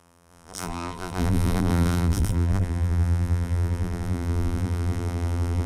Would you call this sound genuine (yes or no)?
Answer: no